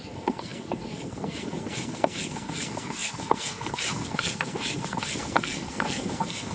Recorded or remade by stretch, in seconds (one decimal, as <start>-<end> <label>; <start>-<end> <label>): 0.0-6.5 remade

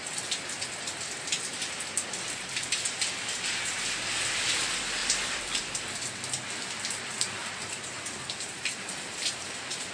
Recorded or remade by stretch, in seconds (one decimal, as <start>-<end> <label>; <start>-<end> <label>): 0.0-5.0 recorded; 5.0-5.7 remade; 5.7-7.4 recorded; 7.4-9.9 remade